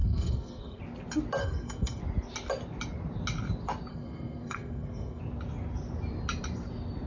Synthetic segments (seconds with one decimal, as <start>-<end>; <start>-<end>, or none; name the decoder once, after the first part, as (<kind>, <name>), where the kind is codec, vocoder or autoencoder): 0.0-0.8 (codec, SNAC); 1.4-2.0; 3.9-5.2